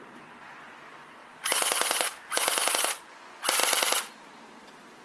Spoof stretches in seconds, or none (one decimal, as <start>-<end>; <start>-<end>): 0.0-3.6